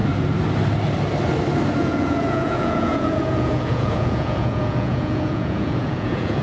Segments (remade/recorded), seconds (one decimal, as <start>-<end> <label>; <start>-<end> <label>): 0.0-1.8 recorded; 1.8-6.4 remade